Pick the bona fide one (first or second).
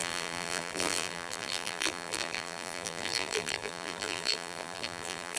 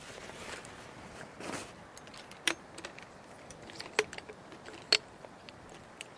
second